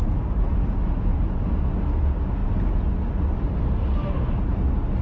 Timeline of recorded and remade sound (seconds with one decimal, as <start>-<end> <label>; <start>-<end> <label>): 0.0-5.0 recorded